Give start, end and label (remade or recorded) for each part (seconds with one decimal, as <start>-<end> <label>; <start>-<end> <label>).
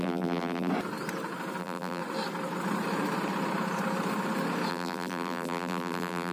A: 0.0-0.7 remade; 0.7-1.6 recorded; 1.6-2.0 remade; 2.0-4.7 recorded; 4.7-6.3 remade